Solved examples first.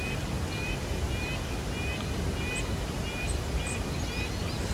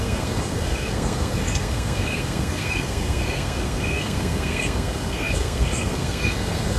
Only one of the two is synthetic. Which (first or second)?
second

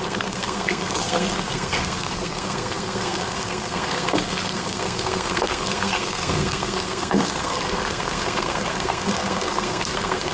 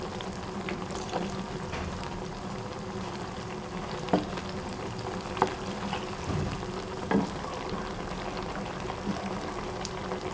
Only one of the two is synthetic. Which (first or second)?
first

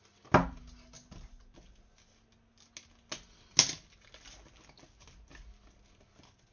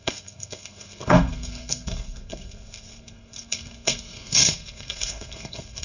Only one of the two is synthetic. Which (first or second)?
second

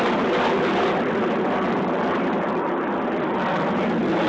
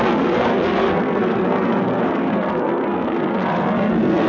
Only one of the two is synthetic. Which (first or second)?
second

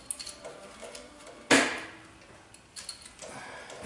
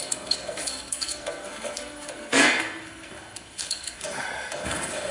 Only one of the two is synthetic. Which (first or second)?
second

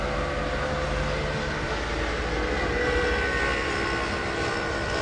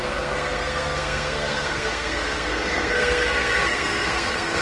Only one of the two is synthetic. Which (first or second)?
second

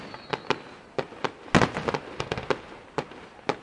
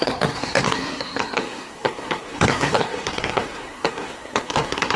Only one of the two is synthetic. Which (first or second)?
second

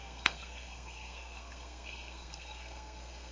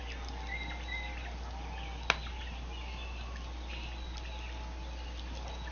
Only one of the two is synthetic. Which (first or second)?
first